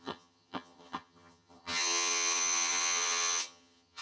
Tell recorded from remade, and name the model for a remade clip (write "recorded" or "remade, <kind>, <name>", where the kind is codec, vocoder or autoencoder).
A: remade, vocoder, HiFi-GAN